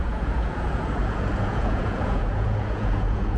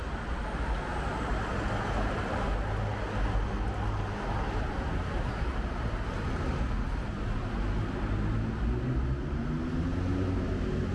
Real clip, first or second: second